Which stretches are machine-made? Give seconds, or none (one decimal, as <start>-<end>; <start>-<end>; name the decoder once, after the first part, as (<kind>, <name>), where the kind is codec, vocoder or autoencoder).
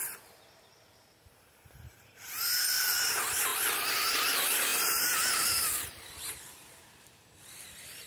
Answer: 0.8-3.5 (vocoder, BigVGAN v2); 4.1-8.1